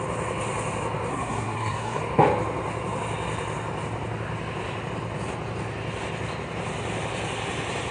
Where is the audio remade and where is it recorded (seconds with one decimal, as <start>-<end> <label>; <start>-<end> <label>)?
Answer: 0.0-1.1 recorded; 1.1-2.0 remade; 2.0-7.9 recorded